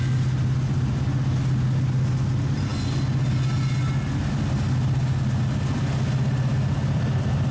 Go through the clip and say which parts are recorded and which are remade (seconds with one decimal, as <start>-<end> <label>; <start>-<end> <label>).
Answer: 0.0-6.5 recorded; 6.5-7.5 remade